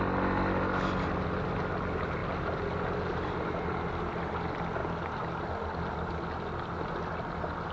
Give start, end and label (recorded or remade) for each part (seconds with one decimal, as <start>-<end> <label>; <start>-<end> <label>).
0.0-7.7 recorded